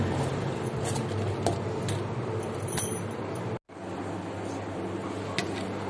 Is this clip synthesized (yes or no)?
no